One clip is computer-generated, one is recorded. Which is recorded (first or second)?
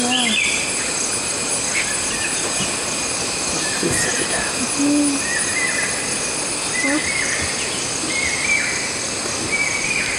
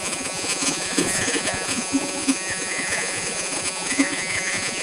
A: first